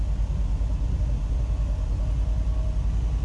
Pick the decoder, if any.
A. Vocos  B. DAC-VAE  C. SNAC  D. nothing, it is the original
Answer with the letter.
D